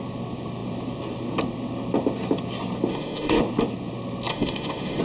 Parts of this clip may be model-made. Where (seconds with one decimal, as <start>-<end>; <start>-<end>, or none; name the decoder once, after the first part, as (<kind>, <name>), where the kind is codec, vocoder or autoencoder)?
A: 2.9-3.4 (autoencoder, DAC-VAE); 4.3-5.0